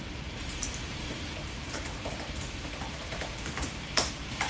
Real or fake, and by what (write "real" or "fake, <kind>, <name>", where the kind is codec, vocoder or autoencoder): fake, vocoder, BigVGAN v2